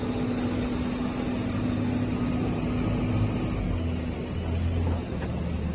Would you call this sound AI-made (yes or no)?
no